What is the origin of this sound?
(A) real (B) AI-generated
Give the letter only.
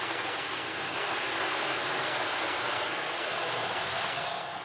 B